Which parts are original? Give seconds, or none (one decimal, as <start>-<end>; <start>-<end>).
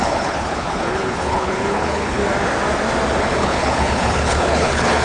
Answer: 2.2-3.2